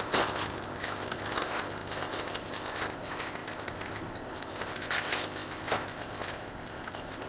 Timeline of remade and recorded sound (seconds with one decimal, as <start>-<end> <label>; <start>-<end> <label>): 0.0-7.3 remade